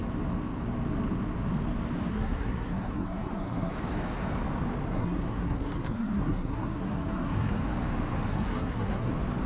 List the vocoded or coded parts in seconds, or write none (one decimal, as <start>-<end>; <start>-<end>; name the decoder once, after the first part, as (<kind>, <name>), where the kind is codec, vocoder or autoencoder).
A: 2.1-3.7 (codec, SNAC); 4.9-7.6; 8.3-9.1